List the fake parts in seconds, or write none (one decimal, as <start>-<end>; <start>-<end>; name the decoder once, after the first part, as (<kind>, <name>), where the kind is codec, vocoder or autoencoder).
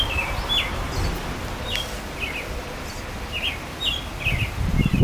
none